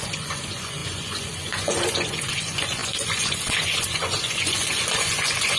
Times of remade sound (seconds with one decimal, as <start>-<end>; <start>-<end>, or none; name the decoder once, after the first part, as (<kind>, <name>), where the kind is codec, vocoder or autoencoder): 0.0-5.6 (vocoder, Vocos)